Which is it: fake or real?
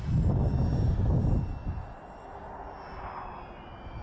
real